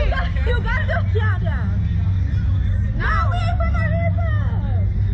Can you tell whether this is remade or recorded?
recorded